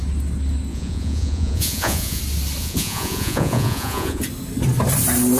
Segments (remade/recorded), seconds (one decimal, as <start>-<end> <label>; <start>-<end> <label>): 0.0-0.7 recorded; 0.7-2.2 remade; 2.2-2.6 recorded; 2.6-4.2 remade; 4.2-5.4 recorded